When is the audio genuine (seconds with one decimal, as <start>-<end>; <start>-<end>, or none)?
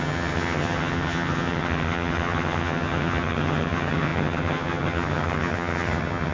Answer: none